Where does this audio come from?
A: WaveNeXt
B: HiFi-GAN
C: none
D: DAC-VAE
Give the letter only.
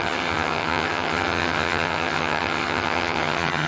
B